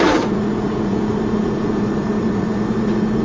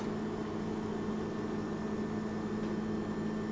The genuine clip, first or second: second